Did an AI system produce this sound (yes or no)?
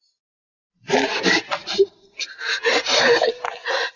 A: no